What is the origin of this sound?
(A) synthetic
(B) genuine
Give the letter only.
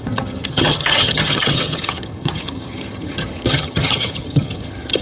A